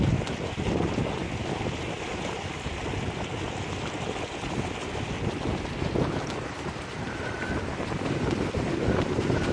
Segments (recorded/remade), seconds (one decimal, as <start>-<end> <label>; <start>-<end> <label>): 0.0-9.5 recorded